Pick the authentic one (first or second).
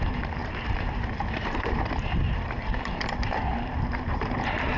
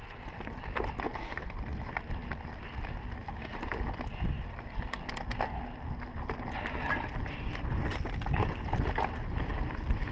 second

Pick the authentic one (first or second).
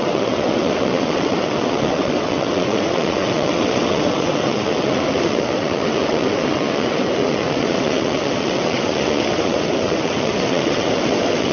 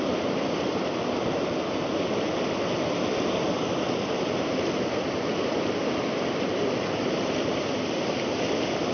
second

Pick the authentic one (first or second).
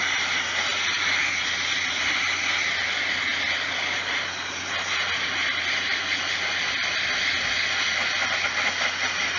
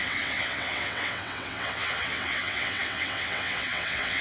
first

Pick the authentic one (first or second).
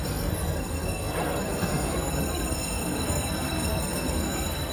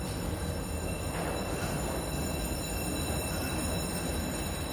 second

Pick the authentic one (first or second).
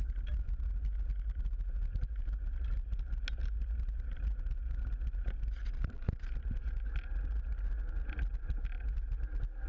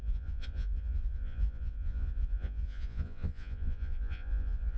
first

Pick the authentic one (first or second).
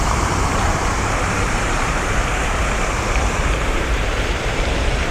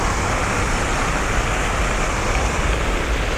second